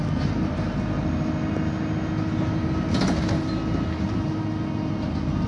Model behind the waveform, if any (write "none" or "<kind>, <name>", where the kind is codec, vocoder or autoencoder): none